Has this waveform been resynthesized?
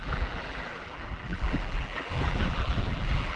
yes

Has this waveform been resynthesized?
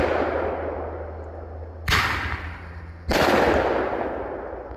no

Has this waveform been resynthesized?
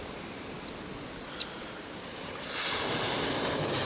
no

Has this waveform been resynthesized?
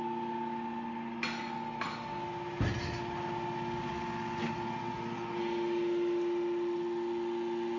no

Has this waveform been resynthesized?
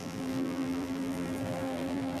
yes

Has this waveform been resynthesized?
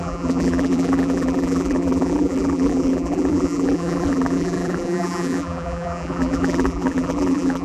yes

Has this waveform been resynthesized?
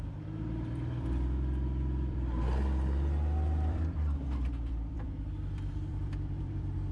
yes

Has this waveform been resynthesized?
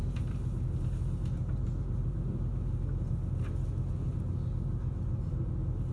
no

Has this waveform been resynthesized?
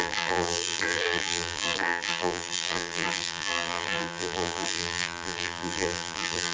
yes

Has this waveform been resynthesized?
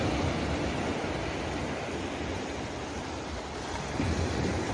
no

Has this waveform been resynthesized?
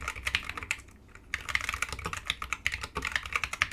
no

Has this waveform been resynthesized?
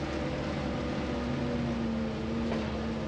no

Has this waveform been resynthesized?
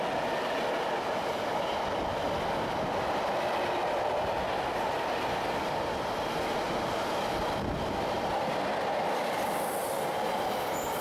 no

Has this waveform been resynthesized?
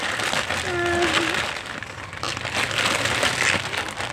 no